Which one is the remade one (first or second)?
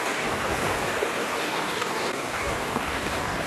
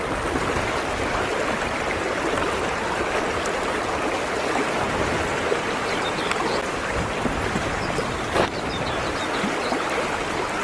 first